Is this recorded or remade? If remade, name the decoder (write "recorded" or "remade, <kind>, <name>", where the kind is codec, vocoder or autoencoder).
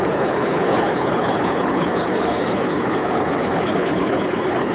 remade, codec, HILCodec